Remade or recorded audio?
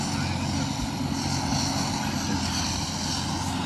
recorded